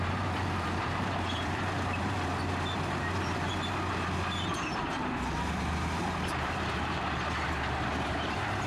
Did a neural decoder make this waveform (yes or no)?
yes